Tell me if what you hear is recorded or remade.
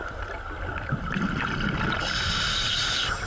recorded